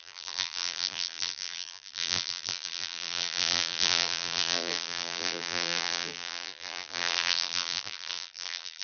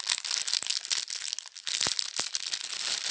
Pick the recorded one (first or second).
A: second